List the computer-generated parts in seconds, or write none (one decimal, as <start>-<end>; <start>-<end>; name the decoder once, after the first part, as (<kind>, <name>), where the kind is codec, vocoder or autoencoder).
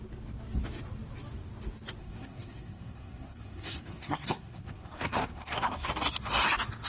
2.0-5.9 (codec, SNAC)